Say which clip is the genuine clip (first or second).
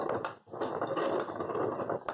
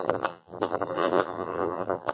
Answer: first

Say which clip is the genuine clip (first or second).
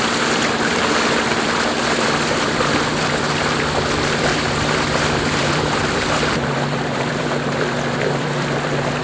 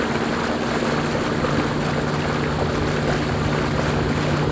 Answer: second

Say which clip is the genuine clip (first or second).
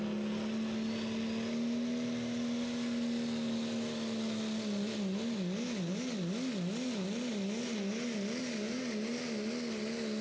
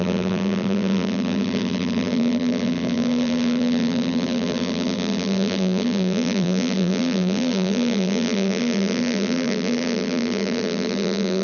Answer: first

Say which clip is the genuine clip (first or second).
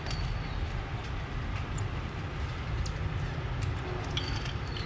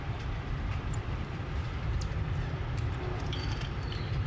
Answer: first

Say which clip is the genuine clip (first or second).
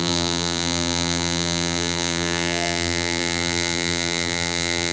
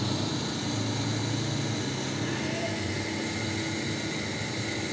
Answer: second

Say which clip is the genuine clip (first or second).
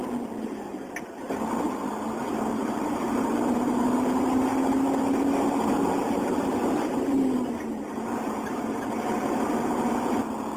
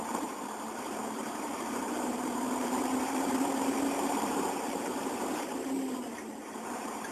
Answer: first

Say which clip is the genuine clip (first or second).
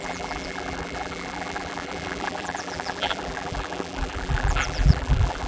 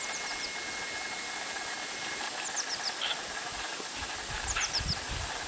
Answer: second